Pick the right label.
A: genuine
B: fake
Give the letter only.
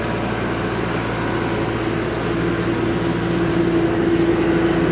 A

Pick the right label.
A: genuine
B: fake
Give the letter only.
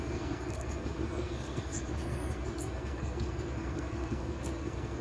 B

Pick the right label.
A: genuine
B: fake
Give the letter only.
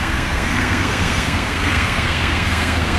B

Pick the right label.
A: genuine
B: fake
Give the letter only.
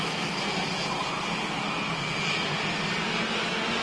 A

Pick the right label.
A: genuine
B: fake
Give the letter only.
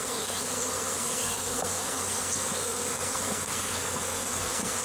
B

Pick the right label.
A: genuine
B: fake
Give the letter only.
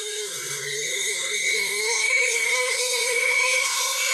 B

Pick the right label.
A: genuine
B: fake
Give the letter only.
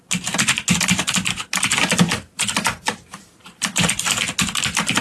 A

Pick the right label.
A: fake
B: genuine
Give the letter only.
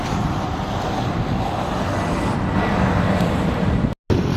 B